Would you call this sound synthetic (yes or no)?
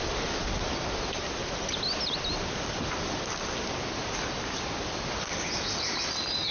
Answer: no